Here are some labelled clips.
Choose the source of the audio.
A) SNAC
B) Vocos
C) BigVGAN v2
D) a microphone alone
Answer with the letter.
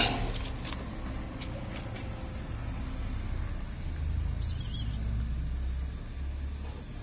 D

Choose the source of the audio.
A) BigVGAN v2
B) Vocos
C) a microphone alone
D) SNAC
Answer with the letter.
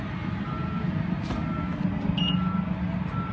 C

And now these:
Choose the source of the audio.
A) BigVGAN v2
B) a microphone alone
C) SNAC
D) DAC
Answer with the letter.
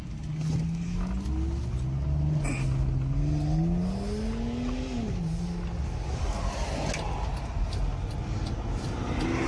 B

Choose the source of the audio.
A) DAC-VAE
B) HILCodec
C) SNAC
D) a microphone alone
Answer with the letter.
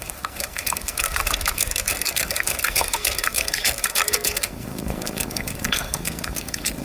C